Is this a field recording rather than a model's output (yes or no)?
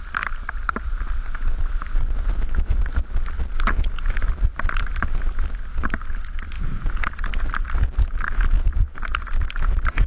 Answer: yes